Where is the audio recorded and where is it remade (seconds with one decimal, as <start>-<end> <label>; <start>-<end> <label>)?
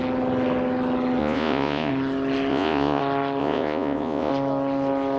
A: 0.0-1.2 recorded; 1.2-1.9 remade; 1.9-2.5 recorded; 2.5-3.0 remade; 3.0-3.4 recorded; 3.4-4.3 remade; 4.3-5.2 recorded